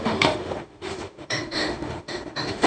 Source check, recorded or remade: remade